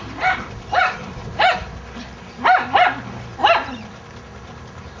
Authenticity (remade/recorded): recorded